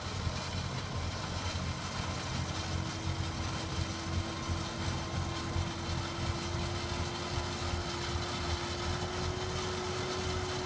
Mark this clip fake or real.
real